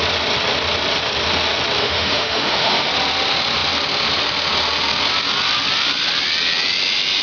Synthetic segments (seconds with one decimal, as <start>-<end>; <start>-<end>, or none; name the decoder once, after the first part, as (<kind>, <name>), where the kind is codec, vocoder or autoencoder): 1.8-2.9 (autoencoder, DAC-VAE)